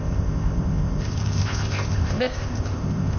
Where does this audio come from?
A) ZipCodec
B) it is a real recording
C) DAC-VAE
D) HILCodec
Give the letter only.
A